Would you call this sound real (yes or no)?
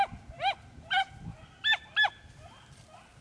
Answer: yes